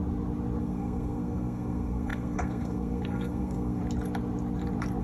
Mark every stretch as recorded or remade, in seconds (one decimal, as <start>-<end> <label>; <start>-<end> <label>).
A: 0.0-0.6 recorded; 0.6-3.8 remade; 3.8-5.0 recorded

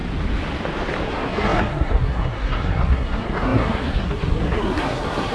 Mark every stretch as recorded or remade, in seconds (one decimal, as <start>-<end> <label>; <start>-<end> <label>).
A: 0.0-1.1 recorded; 1.1-5.3 remade